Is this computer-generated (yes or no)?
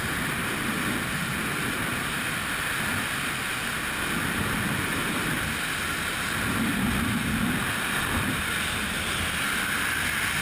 no